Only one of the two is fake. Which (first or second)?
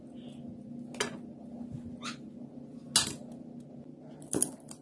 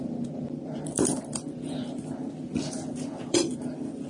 second